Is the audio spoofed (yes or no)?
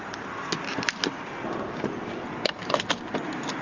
no